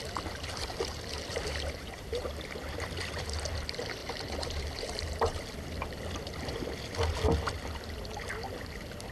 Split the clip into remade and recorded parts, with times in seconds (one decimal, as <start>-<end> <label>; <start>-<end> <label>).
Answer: 0.0-1.3 recorded; 1.3-2.2 remade; 2.2-4.0 recorded; 4.0-5.4 remade; 5.4-9.1 recorded